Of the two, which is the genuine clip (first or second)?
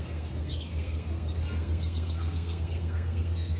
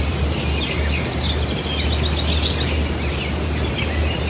second